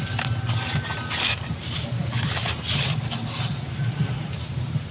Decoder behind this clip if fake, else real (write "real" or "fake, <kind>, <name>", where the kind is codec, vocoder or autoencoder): real